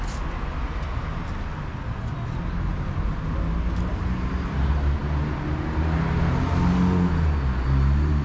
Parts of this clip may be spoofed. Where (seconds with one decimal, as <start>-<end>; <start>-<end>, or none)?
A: none